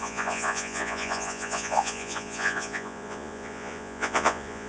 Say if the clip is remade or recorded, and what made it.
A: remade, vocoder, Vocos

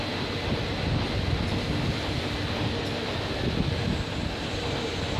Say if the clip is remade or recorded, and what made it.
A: recorded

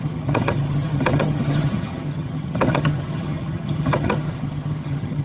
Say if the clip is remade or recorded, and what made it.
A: remade, vocoder, HiFi-GAN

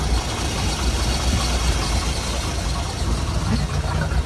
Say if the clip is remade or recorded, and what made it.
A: recorded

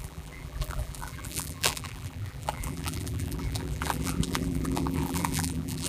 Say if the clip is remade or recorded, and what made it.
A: remade, vocoder, BigVGAN v2